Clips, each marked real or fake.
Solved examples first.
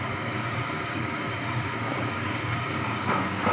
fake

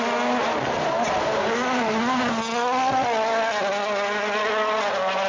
real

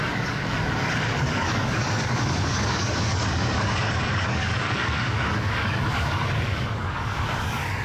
fake